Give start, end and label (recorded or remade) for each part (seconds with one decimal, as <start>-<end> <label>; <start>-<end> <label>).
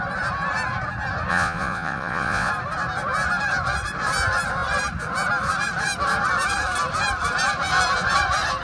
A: 0.0-1.3 recorded; 1.3-2.5 remade; 2.5-8.6 recorded